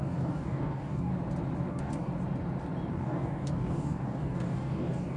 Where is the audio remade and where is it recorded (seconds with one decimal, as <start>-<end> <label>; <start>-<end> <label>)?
0.0-1.1 remade; 1.1-1.7 recorded; 1.7-2.1 remade; 2.1-2.9 recorded; 2.9-5.2 remade